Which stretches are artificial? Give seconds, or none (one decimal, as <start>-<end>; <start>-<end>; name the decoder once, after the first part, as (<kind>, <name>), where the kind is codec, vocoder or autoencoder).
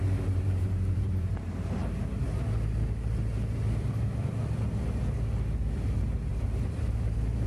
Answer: 0.0-1.8 (vocoder, BigVGAN v2); 6.3-7.5